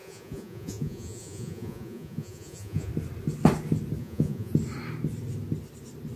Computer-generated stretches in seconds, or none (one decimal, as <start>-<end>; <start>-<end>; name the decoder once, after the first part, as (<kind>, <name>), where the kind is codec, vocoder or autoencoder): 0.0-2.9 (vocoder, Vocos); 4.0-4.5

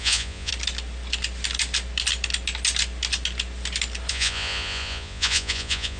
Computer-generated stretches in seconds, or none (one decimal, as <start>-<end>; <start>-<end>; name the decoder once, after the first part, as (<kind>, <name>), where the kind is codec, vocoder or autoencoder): 0.0-0.5 (vocoder, Vocos); 4.1-6.0

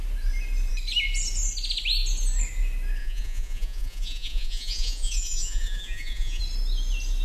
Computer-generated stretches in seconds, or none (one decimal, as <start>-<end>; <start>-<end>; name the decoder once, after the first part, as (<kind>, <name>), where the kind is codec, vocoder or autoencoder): 3.0-6.4 (vocoder, Vocos)